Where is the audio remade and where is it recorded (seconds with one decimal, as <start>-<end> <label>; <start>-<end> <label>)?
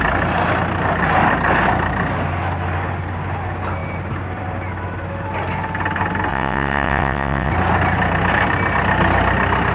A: 0.0-6.3 recorded; 6.3-7.5 remade; 7.5-9.7 recorded